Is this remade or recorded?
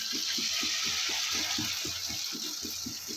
recorded